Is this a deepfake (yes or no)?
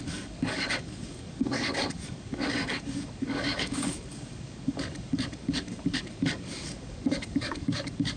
yes